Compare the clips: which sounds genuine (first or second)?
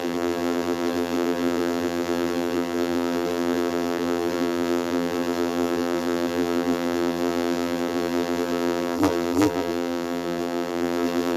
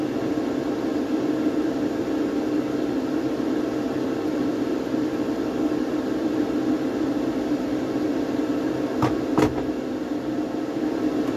second